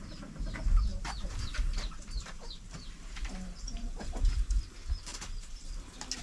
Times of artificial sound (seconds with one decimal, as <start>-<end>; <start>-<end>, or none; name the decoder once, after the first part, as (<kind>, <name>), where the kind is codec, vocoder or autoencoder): 0.9-4.6 (vocoder, BigVGAN v2); 5.1-5.7

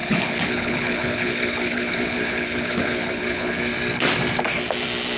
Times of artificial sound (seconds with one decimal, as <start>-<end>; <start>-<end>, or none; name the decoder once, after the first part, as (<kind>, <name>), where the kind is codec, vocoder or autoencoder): 0.0-3.7 (codec, HILCodec)

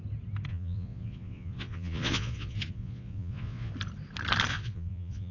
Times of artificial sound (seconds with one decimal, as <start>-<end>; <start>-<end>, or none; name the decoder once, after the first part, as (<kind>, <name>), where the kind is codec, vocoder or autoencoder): 0.5-3.7 (vocoder, Vocos); 4.5-5.3